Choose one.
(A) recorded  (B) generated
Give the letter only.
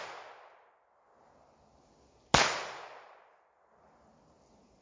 A